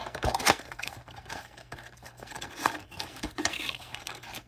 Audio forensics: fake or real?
fake